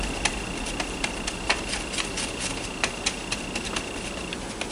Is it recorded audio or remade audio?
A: recorded